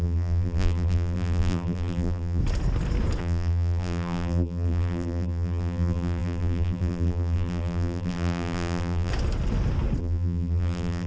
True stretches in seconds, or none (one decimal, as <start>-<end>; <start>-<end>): 2.4-3.2; 9.1-10.0